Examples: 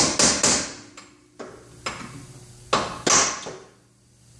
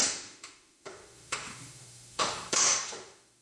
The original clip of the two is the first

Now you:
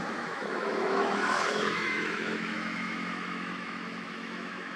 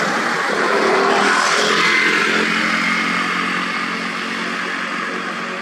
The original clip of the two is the second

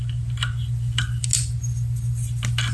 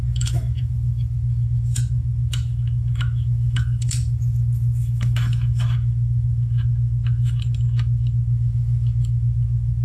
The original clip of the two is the first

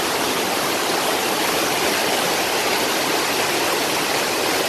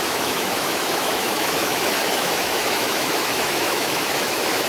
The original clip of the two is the first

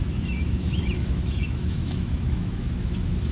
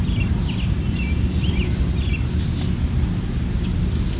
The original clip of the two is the second